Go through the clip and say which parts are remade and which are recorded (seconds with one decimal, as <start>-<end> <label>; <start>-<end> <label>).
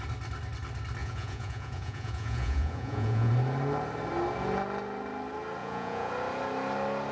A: 0.0-1.0 recorded; 1.0-3.3 remade; 3.3-5.6 recorded; 5.6-6.1 remade; 6.1-7.1 recorded